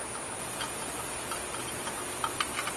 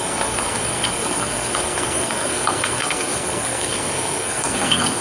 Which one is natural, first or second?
first